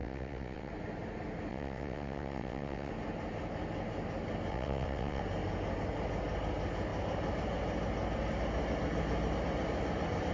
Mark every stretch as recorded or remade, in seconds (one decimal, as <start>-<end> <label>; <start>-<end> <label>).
0.0-0.7 remade; 0.7-1.5 recorded; 1.5-2.9 remade; 2.9-4.5 recorded; 4.5-5.2 remade; 5.2-10.3 recorded